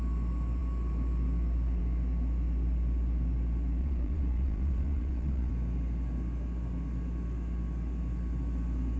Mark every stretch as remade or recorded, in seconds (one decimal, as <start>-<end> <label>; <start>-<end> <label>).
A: 0.0-3.8 recorded; 3.8-5.5 remade; 5.5-9.0 recorded

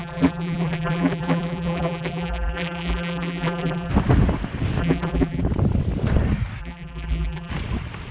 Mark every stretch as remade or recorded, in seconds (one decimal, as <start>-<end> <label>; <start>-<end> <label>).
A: 0.0-3.9 remade; 3.9-4.8 recorded; 4.8-5.4 remade; 5.4-6.6 recorded; 6.6-7.5 remade; 7.5-8.1 recorded

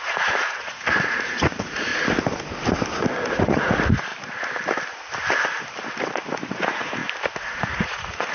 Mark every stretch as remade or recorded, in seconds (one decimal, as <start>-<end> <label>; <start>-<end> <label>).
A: 0.0-1.9 remade; 1.9-3.4 recorded; 3.4-4.1 remade; 4.1-6.5 recorded; 6.5-7.0 remade; 7.0-7.6 recorded; 7.6-8.3 remade

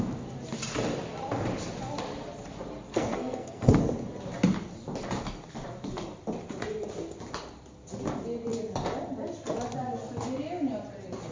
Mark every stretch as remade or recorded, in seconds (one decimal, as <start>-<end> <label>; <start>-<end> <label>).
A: 0.0-2.9 recorded; 2.9-3.8 remade; 3.8-11.3 recorded

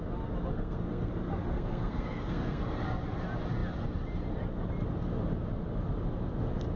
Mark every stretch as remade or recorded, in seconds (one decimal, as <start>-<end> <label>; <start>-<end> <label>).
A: 0.0-0.5 recorded; 0.5-1.1 remade; 1.1-1.5 recorded; 1.5-2.6 remade; 2.6-6.8 recorded

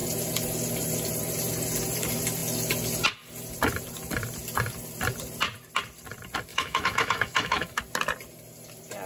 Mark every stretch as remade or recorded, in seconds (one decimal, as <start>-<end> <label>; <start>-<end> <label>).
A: 0.0-6.5 recorded; 6.5-7.8 remade; 7.8-9.1 recorded

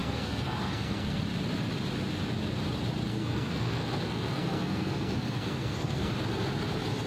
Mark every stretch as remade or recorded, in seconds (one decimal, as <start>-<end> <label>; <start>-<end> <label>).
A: 0.0-1.2 remade; 1.2-3.1 recorded; 3.1-6.1 remade; 6.1-7.1 recorded